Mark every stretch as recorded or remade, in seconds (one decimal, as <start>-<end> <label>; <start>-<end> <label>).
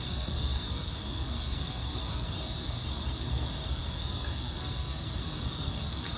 0.0-6.2 remade